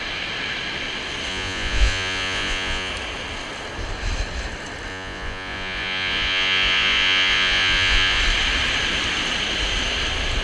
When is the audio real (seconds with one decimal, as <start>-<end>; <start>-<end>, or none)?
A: 0.0-1.3; 2.9-4.9; 8.2-10.4